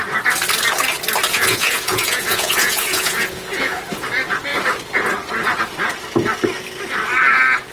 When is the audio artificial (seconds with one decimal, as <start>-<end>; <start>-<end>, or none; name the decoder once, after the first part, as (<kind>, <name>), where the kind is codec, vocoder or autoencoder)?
1.3-3.8 (vocoder, Vocos)